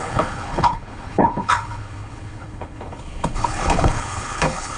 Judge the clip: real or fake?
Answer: fake